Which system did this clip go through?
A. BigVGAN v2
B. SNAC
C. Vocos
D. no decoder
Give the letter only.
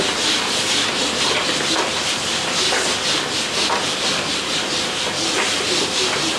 D